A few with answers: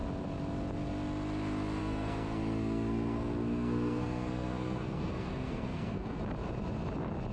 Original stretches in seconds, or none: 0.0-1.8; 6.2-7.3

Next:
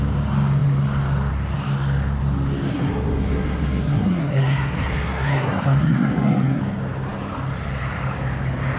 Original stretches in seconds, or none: 0.0-2.7; 6.6-8.8

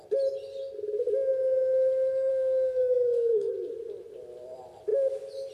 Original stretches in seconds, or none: 0.0-2.3; 3.5-5.5